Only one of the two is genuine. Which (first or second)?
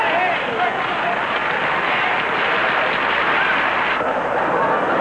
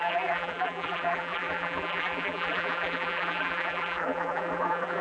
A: first